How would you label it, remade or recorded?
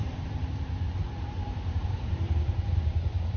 remade